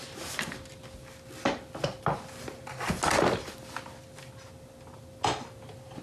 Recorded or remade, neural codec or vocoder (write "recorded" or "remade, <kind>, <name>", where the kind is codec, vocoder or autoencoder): recorded